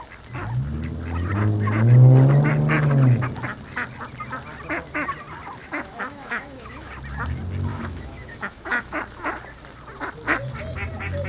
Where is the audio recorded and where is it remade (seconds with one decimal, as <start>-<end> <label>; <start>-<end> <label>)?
0.0-5.6 recorded; 5.6-6.9 remade; 6.9-7.7 recorded; 7.7-9.0 remade; 9.0-11.3 recorded